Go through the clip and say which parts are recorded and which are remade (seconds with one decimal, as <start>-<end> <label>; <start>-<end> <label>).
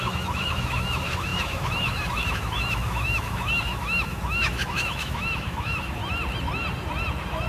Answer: 0.0-6.0 remade; 6.0-7.5 recorded